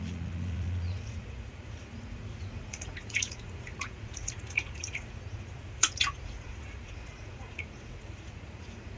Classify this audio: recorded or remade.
remade